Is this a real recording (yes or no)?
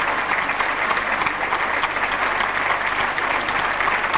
yes